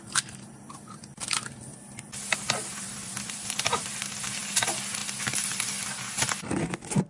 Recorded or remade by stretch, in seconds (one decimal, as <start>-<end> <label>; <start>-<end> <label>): 0.0-2.7 recorded; 2.7-4.4 remade; 4.4-7.1 recorded

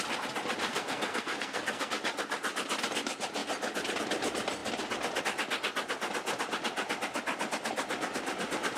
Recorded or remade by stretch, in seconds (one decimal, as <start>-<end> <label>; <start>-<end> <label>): 0.0-0.7 recorded; 0.7-1.9 remade; 1.9-8.8 recorded

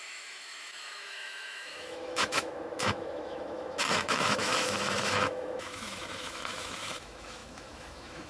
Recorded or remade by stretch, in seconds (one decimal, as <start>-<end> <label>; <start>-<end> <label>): 0.0-8.3 remade

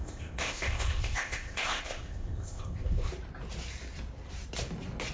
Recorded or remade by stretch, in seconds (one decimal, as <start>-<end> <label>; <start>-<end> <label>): 0.0-3.1 remade; 3.1-5.1 recorded

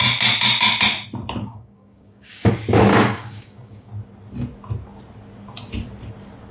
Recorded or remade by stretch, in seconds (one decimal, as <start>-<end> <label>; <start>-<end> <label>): 0.0-1.4 recorded; 1.4-2.5 remade; 2.5-2.9 recorded; 2.9-3.9 remade; 3.9-6.5 recorded

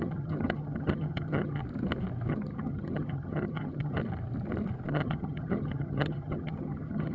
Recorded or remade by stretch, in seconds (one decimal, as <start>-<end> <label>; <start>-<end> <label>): 0.0-1.6 remade; 1.6-2.3 recorded; 2.3-4.0 remade; 4.0-4.9 recorded; 4.9-7.1 remade

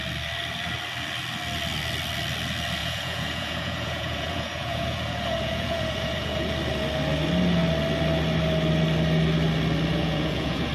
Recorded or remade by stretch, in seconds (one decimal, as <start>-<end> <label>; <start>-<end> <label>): 0.0-2.8 recorded; 2.8-6.5 remade; 6.5-9.9 recorded; 9.9-10.7 remade

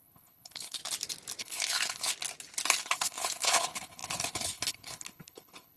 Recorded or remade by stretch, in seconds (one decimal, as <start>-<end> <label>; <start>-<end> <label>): 0.0-0.8 remade; 0.8-1.4 recorded; 1.4-2.1 remade; 2.1-2.8 recorded; 2.8-5.8 remade